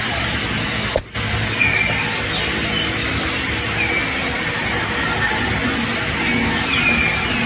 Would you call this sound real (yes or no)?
yes